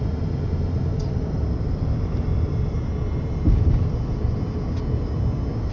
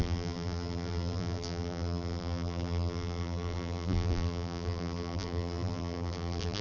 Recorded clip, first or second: first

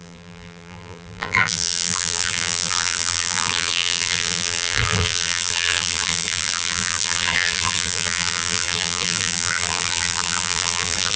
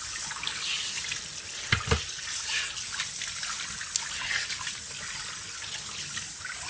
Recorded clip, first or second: second